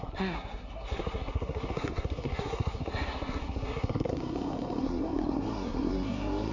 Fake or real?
fake